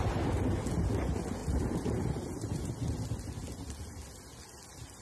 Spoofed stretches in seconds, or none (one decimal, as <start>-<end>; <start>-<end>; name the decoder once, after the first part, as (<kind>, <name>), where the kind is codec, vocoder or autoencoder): 1.4-2.7 (vocoder, BigVGAN v2)